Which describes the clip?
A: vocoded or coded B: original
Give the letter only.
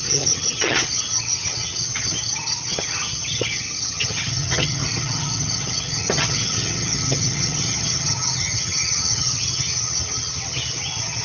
A